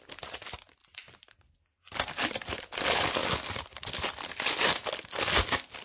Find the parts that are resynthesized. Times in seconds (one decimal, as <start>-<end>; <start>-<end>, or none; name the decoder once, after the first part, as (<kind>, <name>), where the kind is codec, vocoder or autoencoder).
none